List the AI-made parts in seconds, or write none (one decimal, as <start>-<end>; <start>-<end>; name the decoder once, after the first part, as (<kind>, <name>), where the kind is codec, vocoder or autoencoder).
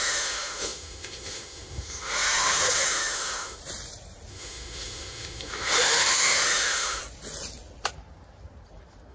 0.0-3.6 (autoencoder, DAC-VAE); 4.3-7.0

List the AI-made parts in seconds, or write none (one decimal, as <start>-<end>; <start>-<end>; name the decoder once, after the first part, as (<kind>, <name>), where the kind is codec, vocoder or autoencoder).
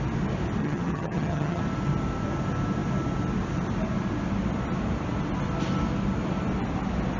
0.6-1.6 (vocoder, HiFi-GAN)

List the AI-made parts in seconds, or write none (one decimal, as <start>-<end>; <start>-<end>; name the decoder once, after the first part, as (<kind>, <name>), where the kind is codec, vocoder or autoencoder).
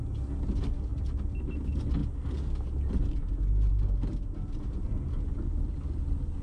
none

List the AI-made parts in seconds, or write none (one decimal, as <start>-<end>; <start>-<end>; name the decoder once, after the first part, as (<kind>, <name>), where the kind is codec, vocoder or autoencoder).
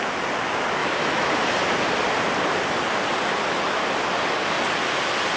0.8-1.3 (autoencoder, DAC-VAE)